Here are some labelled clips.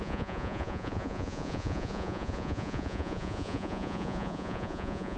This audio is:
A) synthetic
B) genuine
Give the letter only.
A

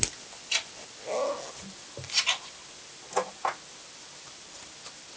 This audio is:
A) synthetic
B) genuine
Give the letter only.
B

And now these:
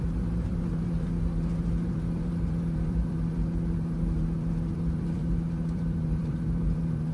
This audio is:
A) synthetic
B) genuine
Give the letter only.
A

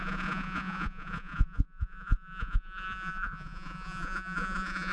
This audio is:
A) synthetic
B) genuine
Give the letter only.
A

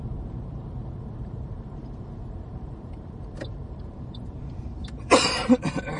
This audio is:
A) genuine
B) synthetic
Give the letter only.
B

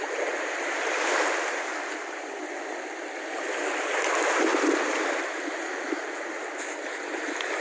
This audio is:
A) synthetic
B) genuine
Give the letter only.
B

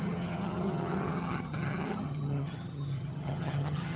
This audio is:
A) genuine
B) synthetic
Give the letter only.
B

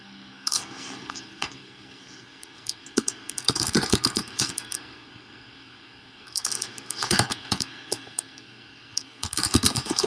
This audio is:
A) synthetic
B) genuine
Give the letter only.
A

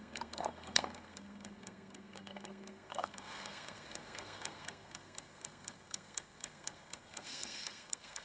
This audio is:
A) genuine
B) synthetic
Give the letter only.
B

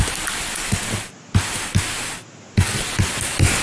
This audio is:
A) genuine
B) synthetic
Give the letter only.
A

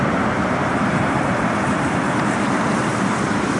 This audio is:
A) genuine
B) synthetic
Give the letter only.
B